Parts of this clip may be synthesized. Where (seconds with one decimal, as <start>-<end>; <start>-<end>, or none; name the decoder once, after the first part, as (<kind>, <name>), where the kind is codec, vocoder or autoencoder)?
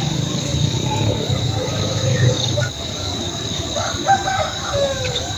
0.0-5.4 (codec, DAC)